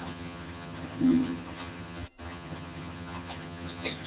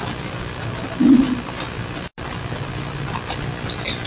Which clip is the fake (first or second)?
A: first